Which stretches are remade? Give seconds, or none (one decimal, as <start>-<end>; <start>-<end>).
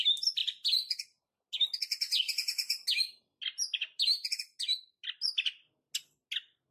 none